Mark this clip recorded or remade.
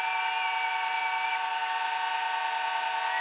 recorded